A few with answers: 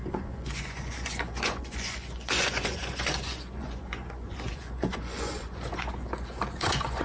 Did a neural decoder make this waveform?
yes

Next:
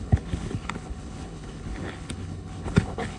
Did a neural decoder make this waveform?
yes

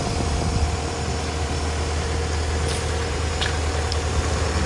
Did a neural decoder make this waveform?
no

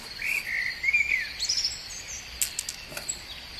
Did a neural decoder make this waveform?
no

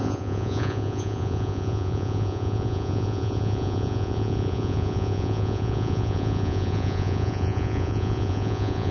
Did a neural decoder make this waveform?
yes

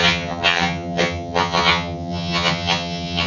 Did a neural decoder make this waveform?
yes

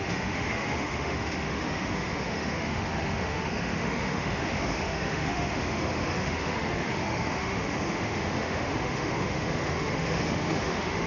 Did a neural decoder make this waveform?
yes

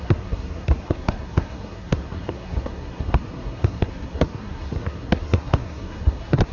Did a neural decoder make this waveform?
yes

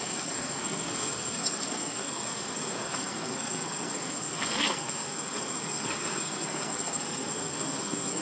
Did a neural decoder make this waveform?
yes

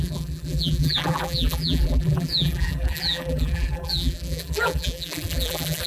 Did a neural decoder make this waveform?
yes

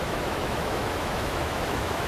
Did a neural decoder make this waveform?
yes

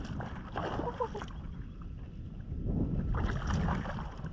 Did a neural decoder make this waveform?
no